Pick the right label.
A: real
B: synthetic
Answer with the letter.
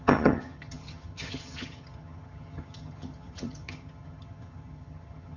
B